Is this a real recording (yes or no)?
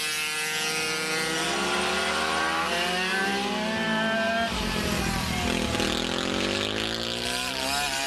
yes